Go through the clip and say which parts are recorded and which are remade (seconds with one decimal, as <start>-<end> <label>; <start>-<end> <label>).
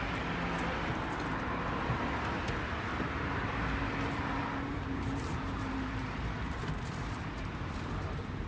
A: 0.0-2.9 recorded; 2.9-7.9 remade; 7.9-8.5 recorded